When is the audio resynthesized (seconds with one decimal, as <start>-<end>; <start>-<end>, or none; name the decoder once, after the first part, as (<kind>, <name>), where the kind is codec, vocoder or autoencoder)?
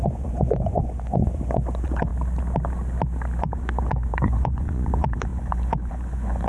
0.0-2.1 (vocoder, Vocos); 3.4-6.5